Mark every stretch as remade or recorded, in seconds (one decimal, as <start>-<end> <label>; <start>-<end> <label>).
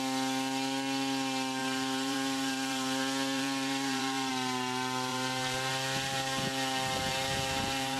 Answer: 0.0-1.6 recorded; 1.6-4.3 remade; 4.3-5.1 recorded; 5.1-5.7 remade; 5.7-7.1 recorded; 7.1-8.0 remade